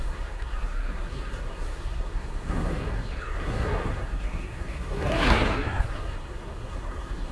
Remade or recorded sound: remade